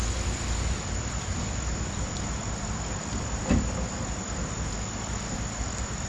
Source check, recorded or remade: recorded